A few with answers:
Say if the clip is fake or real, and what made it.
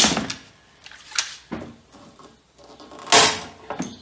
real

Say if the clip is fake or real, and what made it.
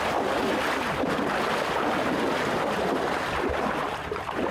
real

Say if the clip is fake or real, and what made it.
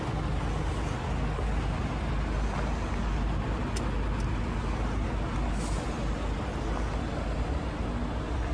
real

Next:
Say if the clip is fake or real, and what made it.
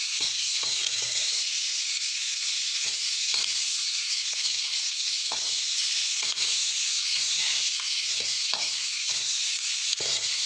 fake, codec, SNAC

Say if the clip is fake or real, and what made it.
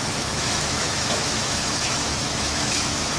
fake, autoencoder, DAC-VAE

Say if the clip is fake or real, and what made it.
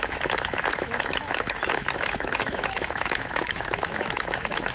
fake, autoencoder, DAC-VAE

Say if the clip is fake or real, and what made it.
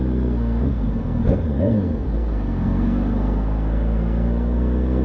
fake, codec, SNAC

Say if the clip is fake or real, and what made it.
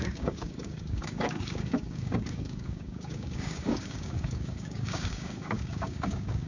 fake, codec, DAC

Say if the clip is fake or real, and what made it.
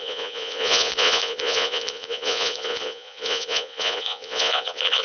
fake, vocoder, Vocos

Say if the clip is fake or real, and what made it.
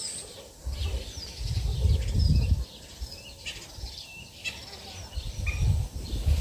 fake, vocoder, BigVGAN v2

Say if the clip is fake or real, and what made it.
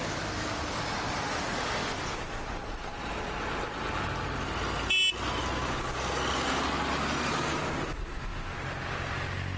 real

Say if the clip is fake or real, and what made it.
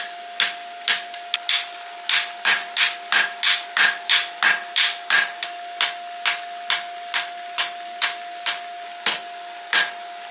real